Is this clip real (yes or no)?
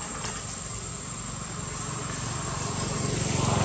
yes